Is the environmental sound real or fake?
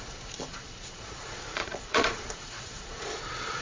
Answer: fake